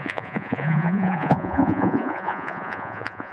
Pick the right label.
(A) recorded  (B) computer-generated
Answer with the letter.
B